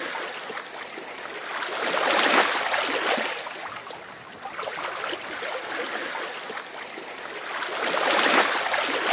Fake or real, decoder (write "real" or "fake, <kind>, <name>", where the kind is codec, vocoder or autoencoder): real